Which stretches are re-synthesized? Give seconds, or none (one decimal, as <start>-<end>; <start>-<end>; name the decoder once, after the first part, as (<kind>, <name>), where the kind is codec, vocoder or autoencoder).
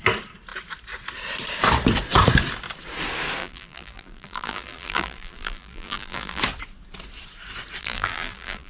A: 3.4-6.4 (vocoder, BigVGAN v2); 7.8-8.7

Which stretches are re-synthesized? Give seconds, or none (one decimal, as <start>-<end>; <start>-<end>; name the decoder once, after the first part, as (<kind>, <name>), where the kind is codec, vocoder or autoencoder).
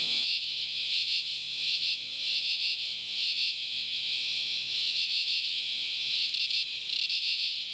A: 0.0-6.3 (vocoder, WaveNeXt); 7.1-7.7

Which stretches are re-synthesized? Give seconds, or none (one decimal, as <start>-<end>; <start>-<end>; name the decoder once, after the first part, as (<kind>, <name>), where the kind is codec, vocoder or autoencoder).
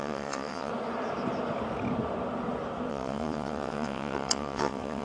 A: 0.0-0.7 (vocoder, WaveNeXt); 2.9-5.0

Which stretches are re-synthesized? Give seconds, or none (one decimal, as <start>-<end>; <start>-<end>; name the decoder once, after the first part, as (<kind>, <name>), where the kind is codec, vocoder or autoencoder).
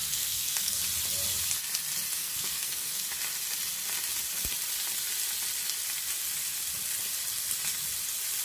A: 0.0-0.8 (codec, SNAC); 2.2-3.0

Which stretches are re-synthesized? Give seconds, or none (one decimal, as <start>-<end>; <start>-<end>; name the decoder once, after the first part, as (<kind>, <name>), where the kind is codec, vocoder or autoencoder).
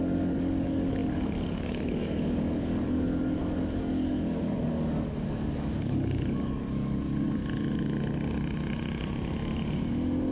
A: 0.0-7.4 (codec, DAC)